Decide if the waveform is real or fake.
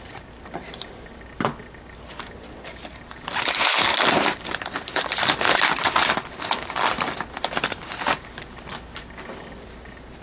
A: real